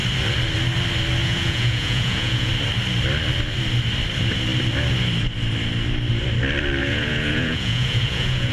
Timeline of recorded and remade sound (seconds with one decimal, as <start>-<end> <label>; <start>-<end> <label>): 0.0-1.2 recorded; 1.2-2.5 remade; 2.5-6.8 recorded; 6.8-8.5 remade